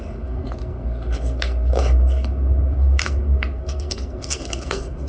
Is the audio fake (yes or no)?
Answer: yes